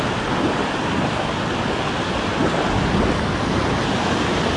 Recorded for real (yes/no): yes